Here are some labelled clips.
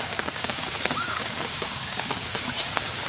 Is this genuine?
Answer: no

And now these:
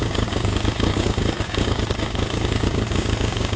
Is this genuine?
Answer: no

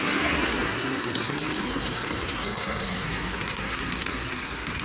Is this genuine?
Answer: no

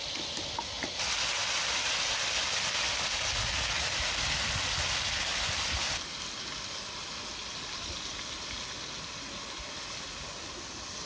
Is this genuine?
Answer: yes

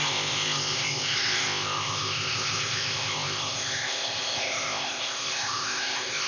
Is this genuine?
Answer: no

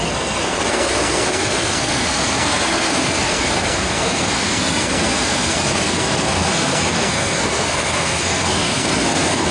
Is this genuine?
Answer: no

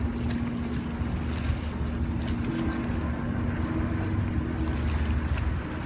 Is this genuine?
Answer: yes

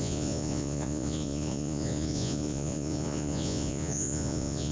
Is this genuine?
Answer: no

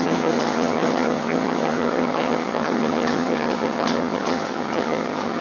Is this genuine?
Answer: no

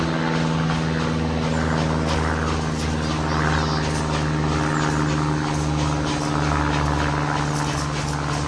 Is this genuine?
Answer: yes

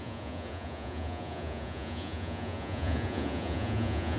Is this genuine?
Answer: no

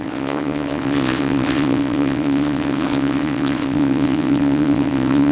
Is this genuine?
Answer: no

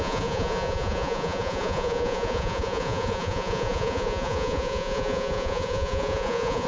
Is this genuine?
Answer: no